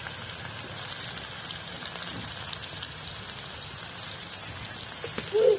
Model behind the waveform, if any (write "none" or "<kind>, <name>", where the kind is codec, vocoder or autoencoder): none